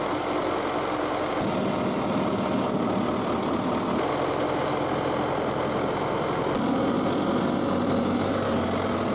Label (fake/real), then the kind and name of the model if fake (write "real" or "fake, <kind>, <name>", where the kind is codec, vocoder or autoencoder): real